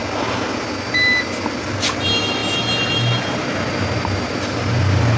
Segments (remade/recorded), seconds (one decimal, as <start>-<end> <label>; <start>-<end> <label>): 0.0-5.2 recorded